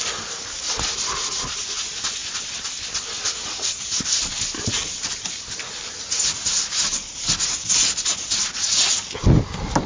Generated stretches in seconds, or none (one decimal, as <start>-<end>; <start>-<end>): none